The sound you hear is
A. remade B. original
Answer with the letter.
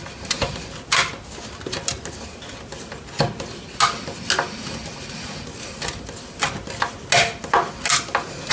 B